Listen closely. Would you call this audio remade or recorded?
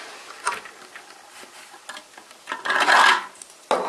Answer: recorded